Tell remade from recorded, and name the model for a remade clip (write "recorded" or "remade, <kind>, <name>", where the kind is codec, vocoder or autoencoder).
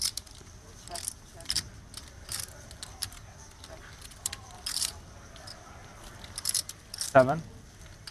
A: remade, vocoder, BigVGAN v2